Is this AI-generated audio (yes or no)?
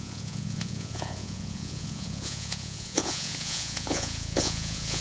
yes